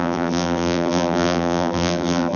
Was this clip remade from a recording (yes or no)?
yes